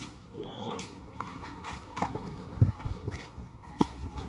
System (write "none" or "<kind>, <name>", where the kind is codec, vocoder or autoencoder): codec, SNAC